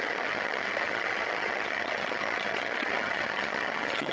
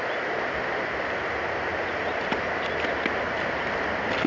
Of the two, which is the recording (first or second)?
second